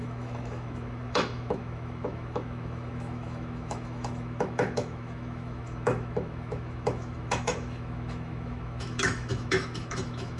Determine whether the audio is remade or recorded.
remade